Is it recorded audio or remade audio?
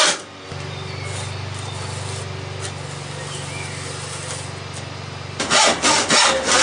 recorded